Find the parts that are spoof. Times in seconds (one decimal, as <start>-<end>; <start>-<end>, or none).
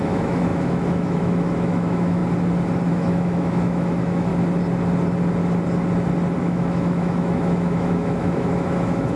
0.0-2.2; 2.9-4.3; 6.4-9.2